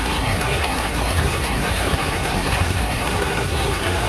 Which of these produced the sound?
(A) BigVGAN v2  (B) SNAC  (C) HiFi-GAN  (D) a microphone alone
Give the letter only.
B